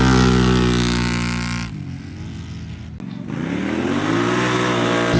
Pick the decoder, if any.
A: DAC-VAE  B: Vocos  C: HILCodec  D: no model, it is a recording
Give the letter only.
D